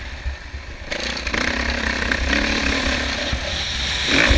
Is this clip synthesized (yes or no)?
no